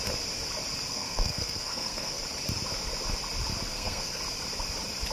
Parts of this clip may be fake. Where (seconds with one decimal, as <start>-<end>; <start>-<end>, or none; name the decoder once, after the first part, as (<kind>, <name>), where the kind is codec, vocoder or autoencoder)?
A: 0.9-2.2 (codec, SNAC); 3.7-4.2